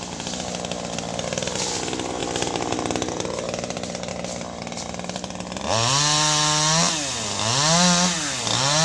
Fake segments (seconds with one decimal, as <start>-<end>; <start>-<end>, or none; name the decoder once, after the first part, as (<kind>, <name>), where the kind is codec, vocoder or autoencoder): none